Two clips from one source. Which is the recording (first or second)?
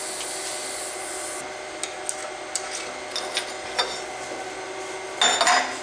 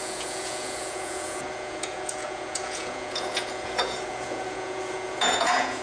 first